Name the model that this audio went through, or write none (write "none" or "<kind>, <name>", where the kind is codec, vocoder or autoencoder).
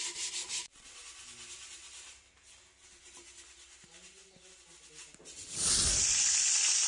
none